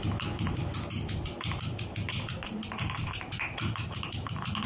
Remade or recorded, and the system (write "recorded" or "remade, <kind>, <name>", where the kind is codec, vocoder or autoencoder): recorded